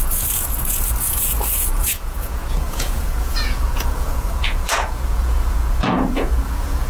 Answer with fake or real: fake